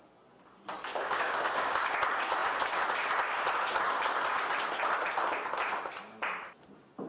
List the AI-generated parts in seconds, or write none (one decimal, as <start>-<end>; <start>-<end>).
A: 0.9-1.9